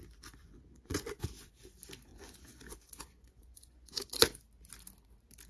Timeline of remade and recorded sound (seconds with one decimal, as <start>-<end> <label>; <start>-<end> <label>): 0.0-0.4 recorded; 0.4-1.2 remade; 1.2-2.1 recorded; 2.1-4.4 remade; 4.4-5.5 recorded